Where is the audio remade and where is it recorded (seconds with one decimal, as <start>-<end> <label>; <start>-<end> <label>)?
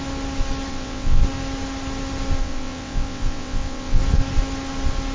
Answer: 0.0-0.7 recorded; 0.7-1.2 remade; 1.2-2.4 recorded; 2.4-4.0 remade; 4.0-5.1 recorded